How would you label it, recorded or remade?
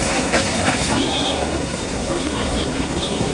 remade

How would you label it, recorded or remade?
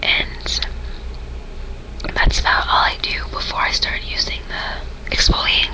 recorded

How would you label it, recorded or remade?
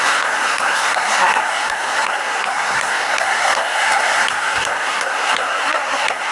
remade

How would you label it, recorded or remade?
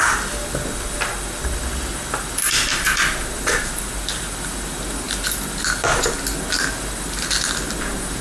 recorded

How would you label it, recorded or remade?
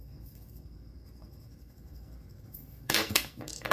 remade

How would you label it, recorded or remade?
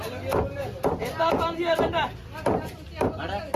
recorded